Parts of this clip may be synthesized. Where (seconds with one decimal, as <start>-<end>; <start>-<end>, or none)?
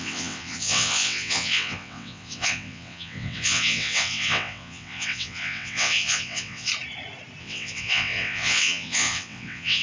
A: 0.0-6.7; 7.4-9.8